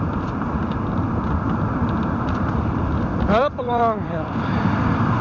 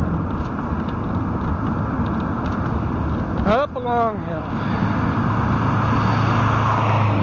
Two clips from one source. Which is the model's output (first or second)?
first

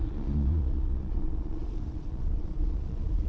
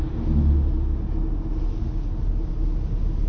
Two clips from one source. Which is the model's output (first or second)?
first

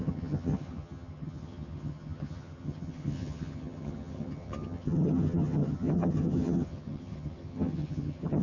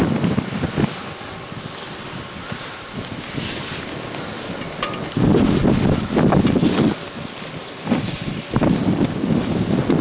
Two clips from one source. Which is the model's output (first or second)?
first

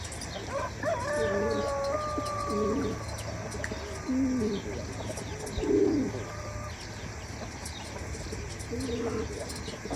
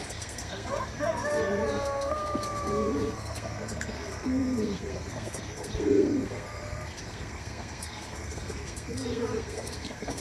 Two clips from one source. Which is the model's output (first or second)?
second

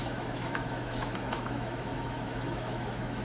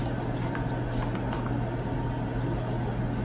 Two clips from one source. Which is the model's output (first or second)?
first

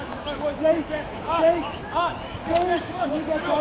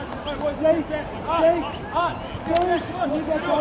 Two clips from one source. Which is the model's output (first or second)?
first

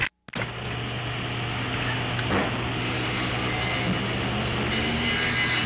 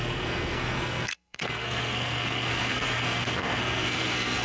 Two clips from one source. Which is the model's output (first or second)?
second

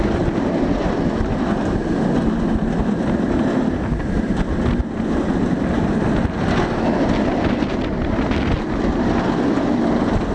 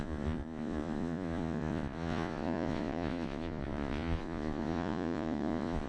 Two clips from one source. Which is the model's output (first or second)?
second